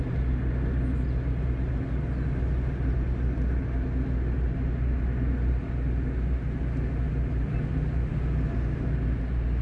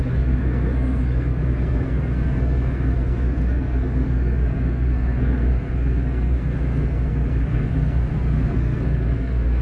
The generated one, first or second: second